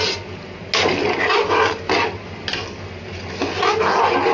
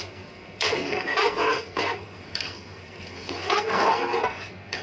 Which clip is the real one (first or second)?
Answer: first